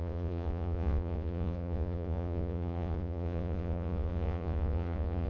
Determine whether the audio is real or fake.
fake